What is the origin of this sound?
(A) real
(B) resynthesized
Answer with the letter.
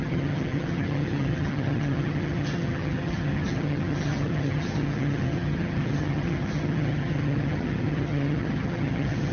B